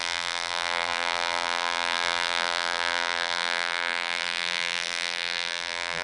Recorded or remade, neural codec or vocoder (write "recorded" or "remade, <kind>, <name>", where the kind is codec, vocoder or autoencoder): remade, vocoder, BigVGAN v2